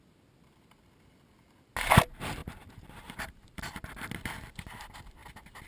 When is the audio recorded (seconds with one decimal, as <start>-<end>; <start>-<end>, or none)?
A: 0.0-2.4; 3.6-5.7